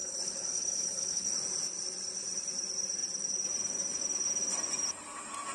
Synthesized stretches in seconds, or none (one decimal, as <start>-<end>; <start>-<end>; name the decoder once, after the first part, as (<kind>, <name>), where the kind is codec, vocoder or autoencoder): 0.0-1.3 (codec, HILCodec)